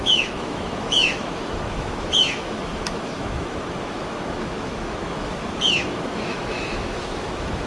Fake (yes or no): yes